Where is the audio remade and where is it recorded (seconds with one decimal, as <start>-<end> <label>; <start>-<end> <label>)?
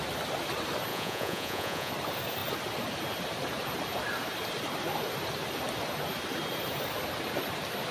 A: 0.0-0.9 recorded; 0.9-1.9 remade; 1.9-7.9 recorded